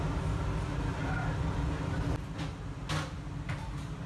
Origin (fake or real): real